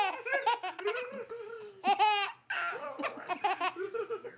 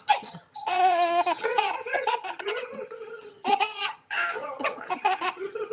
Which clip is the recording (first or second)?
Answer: first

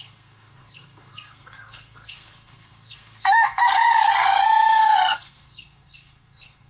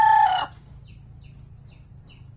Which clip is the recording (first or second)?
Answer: second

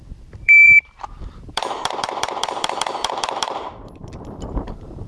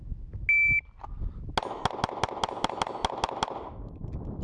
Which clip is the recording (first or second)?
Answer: second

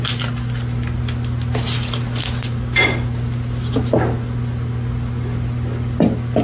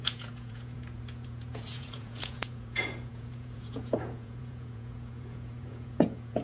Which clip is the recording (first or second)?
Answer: first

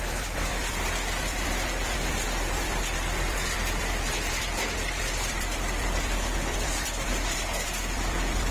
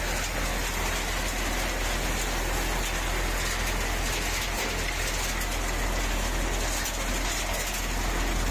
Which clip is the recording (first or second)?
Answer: second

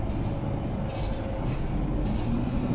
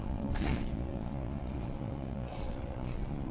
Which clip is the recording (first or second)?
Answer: first